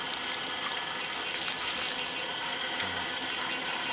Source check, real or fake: real